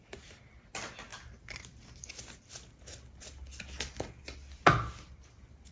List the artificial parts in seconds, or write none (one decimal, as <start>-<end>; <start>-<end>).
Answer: none